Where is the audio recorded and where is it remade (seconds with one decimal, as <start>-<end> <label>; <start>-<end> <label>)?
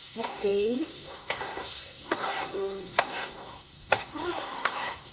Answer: 0.0-5.1 remade